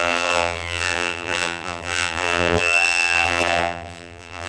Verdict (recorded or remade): remade